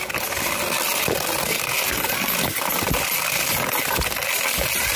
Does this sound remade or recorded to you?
recorded